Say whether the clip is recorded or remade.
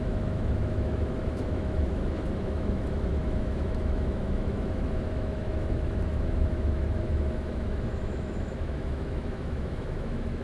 remade